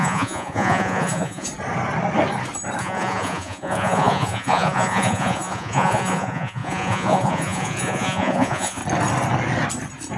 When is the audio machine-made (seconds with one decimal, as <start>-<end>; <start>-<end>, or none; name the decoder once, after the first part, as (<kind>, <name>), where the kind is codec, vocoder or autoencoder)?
0.0-1.5 (vocoder, Vocos); 2.8-8.8